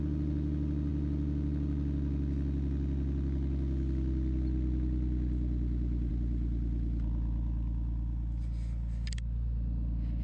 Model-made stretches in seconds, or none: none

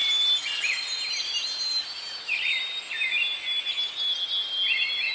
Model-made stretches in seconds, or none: none

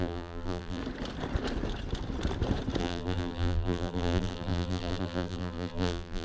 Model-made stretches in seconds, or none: 0.0-0.8 (vocoder, BigVGAN v2); 2.8-6.2